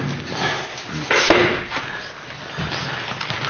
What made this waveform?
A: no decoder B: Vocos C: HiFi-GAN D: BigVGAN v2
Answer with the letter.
A